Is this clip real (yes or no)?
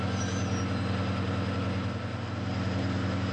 yes